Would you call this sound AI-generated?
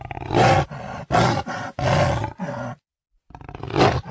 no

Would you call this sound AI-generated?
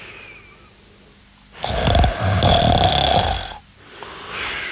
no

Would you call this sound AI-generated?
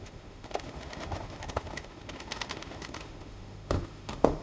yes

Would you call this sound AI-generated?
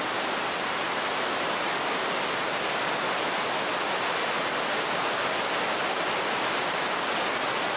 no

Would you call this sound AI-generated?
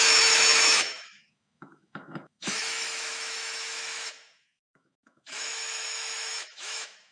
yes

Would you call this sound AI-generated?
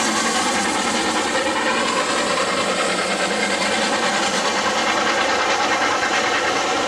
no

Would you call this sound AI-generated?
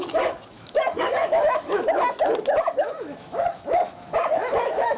yes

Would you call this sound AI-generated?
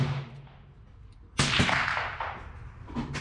no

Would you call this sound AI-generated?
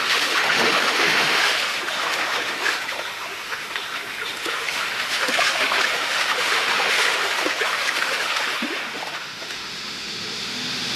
yes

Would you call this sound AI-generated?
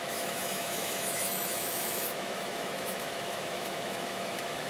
yes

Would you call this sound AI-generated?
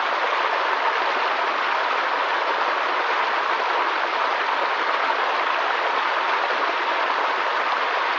no